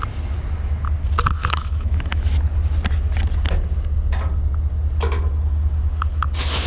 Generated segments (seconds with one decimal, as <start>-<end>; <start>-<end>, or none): 1.4-2.3